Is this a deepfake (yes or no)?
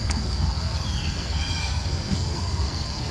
yes